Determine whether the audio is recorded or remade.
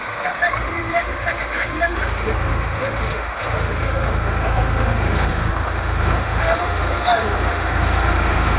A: remade